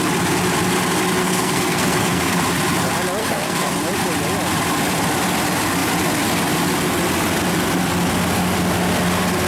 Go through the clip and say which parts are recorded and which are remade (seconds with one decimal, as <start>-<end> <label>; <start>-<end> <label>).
0.0-1.2 recorded; 1.2-2.4 remade; 2.4-3.2 recorded; 3.2-3.7 remade; 3.7-9.5 recorded